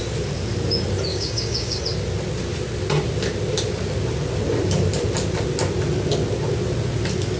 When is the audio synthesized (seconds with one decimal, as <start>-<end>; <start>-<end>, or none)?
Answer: 1.1-1.8